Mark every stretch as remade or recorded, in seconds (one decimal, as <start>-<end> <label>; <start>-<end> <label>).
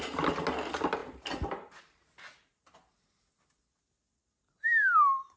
0.0-5.4 recorded